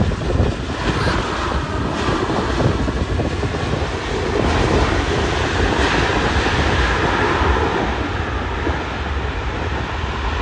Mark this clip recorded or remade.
recorded